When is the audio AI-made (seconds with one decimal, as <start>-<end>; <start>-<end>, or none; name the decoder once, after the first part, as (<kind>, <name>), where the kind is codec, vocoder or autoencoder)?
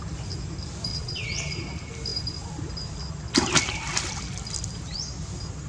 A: 0.9-1.5 (vocoder, WaveNeXt)